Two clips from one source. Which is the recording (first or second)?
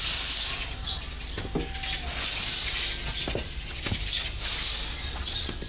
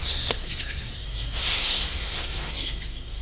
first